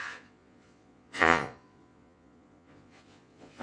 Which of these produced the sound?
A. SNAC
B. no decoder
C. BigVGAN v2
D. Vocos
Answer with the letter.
D